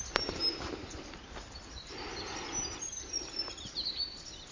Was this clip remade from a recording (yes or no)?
no